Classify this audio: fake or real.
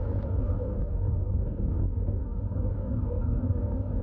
fake